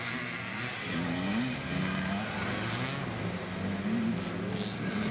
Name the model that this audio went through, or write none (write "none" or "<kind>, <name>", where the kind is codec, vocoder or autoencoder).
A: none